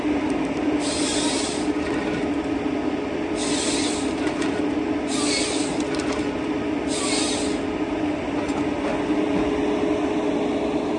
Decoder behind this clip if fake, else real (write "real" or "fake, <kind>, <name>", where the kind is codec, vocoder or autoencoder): real